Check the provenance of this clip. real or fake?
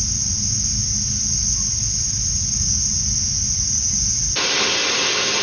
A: real